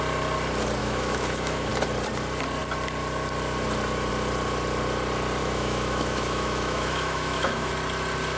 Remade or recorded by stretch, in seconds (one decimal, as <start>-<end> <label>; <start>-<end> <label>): 0.0-0.8 recorded; 0.8-1.7 remade; 1.7-5.4 recorded; 5.4-7.7 remade; 7.7-8.4 recorded

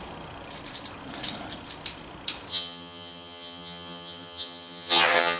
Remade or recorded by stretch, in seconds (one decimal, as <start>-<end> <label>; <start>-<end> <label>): 0.0-2.5 recorded; 2.5-5.4 remade

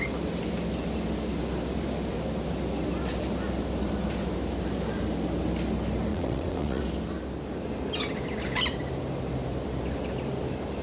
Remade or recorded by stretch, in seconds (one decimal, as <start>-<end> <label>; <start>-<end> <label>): 0.0-6.1 recorded; 6.1-6.8 remade; 6.8-10.8 recorded

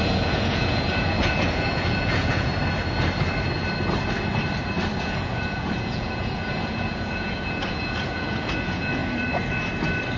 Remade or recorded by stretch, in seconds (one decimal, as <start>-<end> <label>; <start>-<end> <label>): 0.0-2.5 remade; 2.5-5.0 recorded; 5.0-9.0 remade; 9.0-10.2 recorded

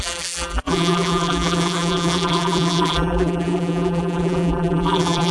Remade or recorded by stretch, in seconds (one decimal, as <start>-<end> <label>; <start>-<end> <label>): 0.0-5.3 remade

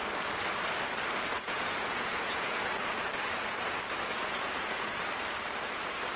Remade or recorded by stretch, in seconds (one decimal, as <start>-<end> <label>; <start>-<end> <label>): 0.0-1.3 recorded; 1.3-2.7 remade; 2.7-4.1 recorded; 4.1-5.0 remade; 5.0-6.2 recorded

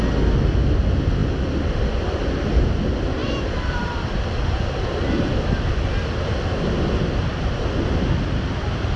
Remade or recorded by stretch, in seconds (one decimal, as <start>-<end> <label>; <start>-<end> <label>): 0.0-3.2 recorded; 3.2-3.9 remade; 3.9-9.0 recorded